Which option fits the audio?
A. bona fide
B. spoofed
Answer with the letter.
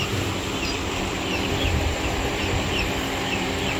B